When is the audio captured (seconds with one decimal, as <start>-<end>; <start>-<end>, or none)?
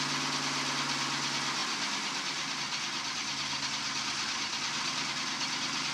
0.0-5.9